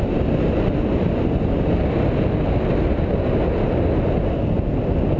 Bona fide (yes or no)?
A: yes